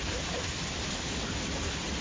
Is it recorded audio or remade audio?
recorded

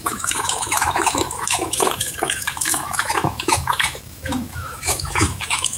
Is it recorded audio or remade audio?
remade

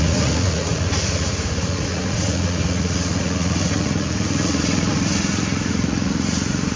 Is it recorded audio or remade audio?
remade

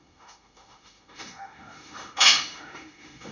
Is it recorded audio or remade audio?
remade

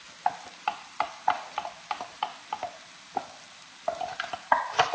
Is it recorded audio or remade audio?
recorded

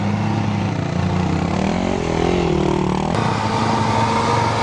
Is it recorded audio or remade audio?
recorded